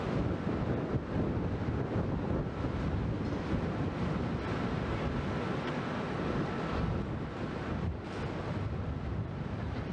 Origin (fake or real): real